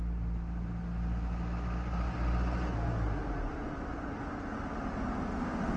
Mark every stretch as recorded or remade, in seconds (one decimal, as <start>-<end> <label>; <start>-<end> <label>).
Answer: 0.0-3.2 recorded; 3.2-4.2 remade; 4.2-5.8 recorded